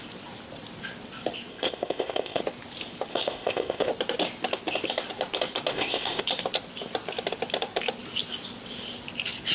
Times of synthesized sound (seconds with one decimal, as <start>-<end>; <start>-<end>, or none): 1.5-2.4; 3.1-3.9; 5.7-6.2